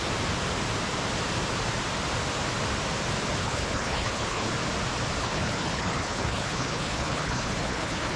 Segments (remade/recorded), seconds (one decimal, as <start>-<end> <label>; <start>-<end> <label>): 0.0-3.4 recorded; 3.4-4.5 remade; 4.5-5.2 recorded; 5.2-8.2 remade